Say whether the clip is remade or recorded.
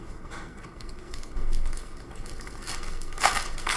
remade